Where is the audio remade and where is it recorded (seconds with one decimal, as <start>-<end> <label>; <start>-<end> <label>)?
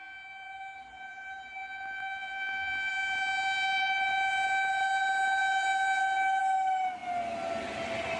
0.0-1.6 recorded; 1.6-2.9 remade; 2.9-8.2 recorded